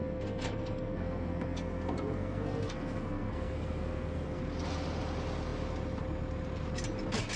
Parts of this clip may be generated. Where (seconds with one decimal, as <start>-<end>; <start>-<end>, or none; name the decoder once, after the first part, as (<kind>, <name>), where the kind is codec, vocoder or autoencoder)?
0.0-4.4 (codec, SNAC)